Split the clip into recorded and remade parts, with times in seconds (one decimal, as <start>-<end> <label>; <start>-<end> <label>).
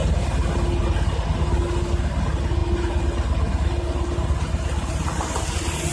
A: 0.0-5.9 recorded